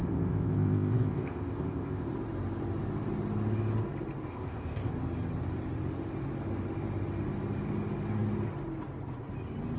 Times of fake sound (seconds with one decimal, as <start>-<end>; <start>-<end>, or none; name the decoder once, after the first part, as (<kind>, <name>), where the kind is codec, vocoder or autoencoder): 0.0-2.1 (codec, ZipCodec); 4.3-4.9